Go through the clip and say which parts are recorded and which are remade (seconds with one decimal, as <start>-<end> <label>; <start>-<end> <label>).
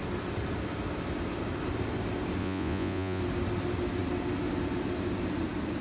0.0-2.4 recorded; 2.4-3.2 remade; 3.2-5.8 recorded